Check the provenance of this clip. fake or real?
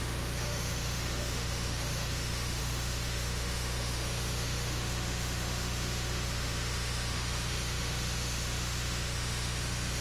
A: fake